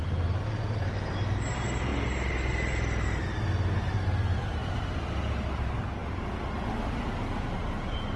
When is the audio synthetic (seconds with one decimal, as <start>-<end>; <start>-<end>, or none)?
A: none